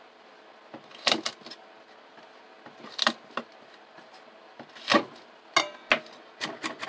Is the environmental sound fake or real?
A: real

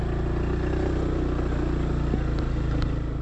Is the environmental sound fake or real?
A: real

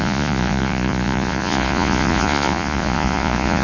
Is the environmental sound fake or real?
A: fake